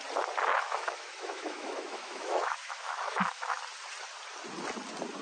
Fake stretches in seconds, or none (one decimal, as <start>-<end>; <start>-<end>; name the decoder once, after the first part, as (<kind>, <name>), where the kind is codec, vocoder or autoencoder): 0.5-3.6 (autoencoder, DAC-VAE)